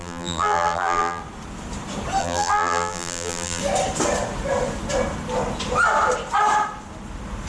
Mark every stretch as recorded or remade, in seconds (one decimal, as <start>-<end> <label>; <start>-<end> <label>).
0.0-1.2 remade; 1.2-2.2 recorded; 2.2-3.6 remade; 3.6-7.5 recorded